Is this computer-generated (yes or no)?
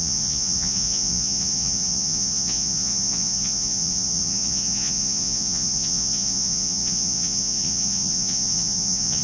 yes